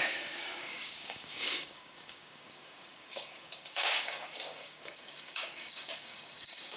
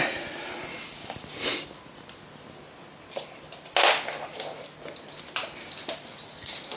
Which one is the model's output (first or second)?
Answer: first